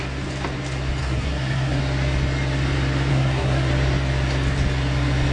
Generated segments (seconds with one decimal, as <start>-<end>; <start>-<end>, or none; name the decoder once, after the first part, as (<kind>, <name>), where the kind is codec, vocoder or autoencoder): 1.0-1.8 (codec, SNAC); 3.1-3.7